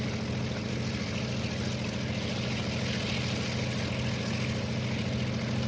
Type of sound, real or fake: real